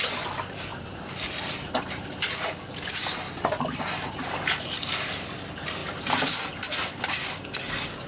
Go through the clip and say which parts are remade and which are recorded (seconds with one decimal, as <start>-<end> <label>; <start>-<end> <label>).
0.0-8.1 recorded